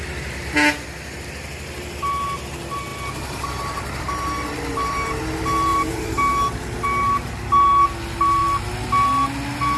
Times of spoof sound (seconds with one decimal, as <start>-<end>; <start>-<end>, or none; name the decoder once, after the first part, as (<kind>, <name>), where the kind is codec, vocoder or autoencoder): 5.7-6.2 (vocoder, BigVGAN v2)